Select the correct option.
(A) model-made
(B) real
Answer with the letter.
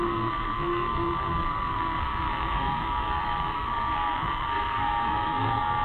A